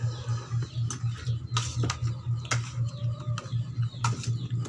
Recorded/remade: recorded